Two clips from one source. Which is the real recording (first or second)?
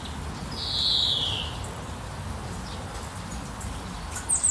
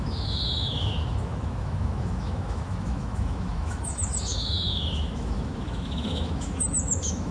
first